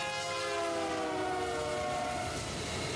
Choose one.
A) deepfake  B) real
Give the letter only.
B